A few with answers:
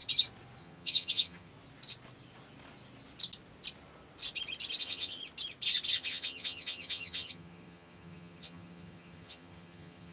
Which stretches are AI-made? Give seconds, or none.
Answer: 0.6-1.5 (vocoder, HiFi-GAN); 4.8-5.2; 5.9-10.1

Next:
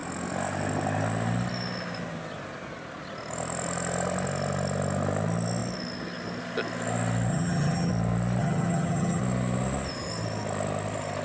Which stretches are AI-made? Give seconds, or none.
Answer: 7.3-7.9 (vocoder, HiFi-GAN); 8.4-9.2

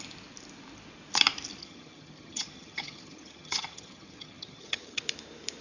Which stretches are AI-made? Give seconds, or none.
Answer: 1.6-5.0 (vocoder, HiFi-GAN)